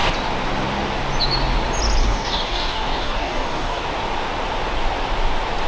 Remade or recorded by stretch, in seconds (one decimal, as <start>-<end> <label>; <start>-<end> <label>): 0.0-2.0 recorded; 2.0-3.8 remade; 3.8-5.7 recorded